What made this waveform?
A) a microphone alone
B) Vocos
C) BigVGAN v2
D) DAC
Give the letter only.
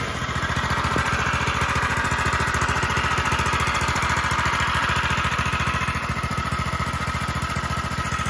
A